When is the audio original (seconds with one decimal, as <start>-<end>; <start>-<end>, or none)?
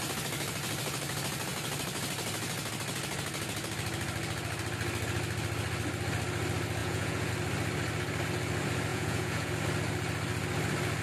0.0-6.8; 7.3-8.9; 9.5-11.0